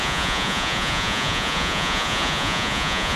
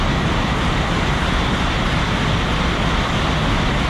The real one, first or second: second